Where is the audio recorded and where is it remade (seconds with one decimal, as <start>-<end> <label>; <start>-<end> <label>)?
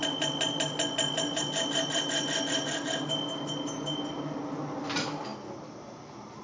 0.0-6.4 recorded